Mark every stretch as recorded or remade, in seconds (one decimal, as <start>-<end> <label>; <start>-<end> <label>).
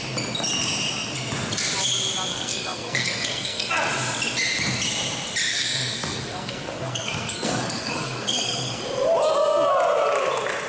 0.0-2.3 recorded; 2.3-3.7 remade; 3.7-5.5 recorded; 5.5-8.8 remade; 8.8-10.7 recorded